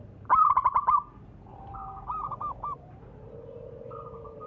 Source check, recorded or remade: remade